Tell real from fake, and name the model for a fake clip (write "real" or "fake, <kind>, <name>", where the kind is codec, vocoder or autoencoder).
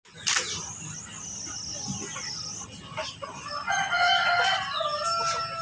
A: real